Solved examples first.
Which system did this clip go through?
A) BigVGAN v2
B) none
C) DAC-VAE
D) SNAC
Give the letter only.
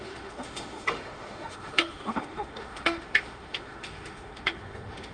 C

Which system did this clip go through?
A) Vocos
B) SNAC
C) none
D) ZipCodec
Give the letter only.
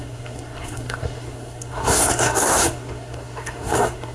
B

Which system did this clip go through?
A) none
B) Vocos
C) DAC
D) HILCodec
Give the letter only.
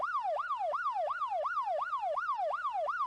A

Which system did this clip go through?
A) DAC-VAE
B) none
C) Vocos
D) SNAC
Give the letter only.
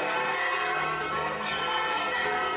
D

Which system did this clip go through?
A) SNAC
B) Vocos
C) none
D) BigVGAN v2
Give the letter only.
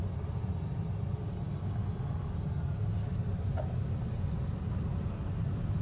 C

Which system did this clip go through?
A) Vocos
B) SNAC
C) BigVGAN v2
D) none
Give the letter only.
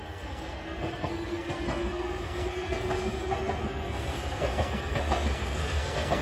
B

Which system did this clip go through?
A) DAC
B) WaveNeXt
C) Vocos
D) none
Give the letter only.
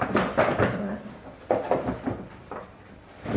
D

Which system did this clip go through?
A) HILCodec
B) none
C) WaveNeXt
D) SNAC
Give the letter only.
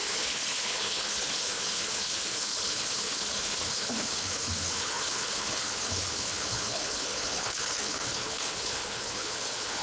A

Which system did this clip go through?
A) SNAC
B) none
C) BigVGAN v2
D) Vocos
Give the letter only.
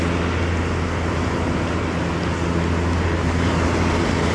B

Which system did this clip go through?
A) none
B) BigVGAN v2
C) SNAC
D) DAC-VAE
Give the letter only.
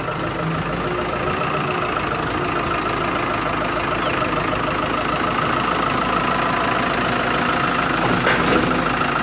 A